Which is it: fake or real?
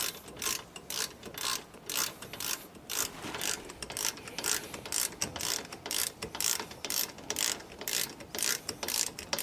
real